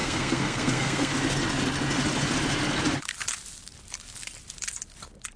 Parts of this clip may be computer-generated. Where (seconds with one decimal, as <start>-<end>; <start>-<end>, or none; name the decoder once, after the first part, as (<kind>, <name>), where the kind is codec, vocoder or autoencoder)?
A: 0.0-1.1 (codec, SNAC)